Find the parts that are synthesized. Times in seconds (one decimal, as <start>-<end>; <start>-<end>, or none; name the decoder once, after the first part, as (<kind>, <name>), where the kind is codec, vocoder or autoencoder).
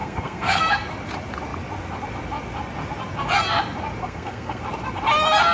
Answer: 0.0-0.6 (codec, SNAC); 4.0-4.6